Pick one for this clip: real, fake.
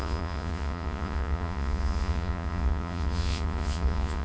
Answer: fake